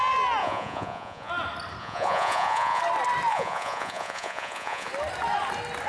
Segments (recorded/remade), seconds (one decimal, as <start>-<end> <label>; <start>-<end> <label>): 0.0-0.4 recorded; 0.4-1.3 remade; 1.3-1.8 recorded; 1.8-2.8 remade; 2.8-3.3 recorded; 3.3-4.9 remade; 4.9-5.9 recorded